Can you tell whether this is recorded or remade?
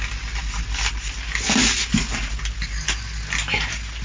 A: recorded